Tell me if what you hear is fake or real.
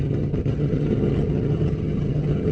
fake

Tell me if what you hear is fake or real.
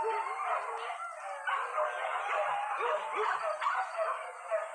real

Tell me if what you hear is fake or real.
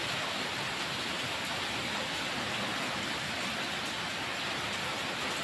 real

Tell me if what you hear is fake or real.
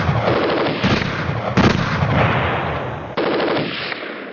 real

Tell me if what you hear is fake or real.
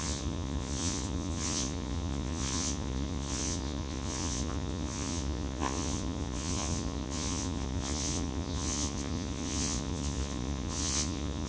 fake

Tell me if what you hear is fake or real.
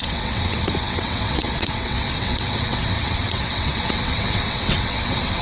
fake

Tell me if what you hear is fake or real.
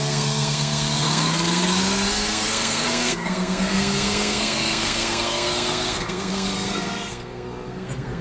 fake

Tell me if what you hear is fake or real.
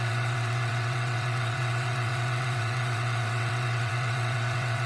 fake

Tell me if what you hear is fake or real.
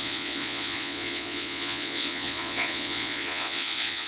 fake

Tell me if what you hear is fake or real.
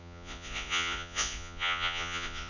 fake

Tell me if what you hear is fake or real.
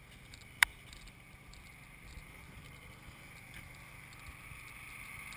fake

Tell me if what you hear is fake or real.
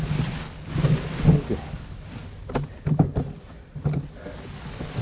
real